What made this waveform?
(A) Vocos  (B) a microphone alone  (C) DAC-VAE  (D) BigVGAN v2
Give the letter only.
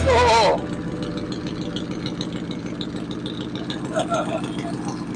B